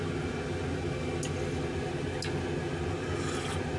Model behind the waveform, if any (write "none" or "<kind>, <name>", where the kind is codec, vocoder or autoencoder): none